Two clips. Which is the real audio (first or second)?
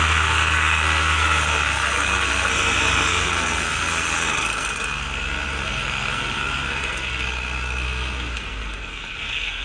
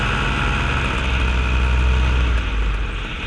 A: second